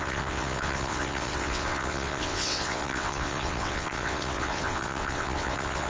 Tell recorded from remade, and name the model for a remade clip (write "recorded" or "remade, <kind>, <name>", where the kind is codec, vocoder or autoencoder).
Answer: remade, vocoder, WaveNeXt